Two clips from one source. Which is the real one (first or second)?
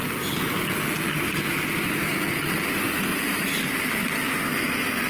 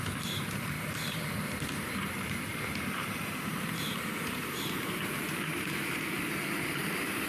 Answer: first